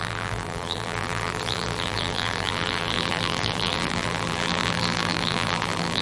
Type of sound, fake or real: fake